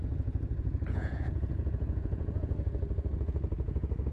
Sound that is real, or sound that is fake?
fake